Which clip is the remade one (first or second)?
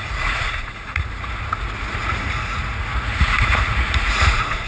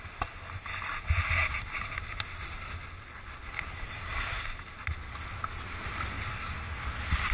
first